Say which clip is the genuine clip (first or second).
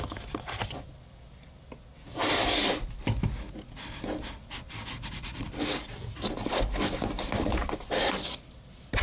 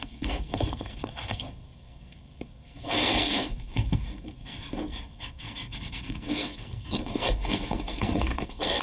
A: first